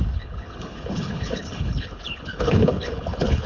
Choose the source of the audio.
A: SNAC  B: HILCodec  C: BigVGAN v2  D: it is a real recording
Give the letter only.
B